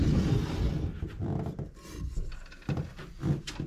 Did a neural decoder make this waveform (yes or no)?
no